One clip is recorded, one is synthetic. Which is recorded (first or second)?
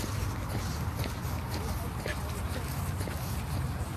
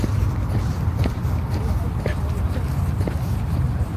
first